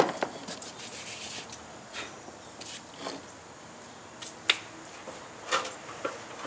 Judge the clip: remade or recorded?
recorded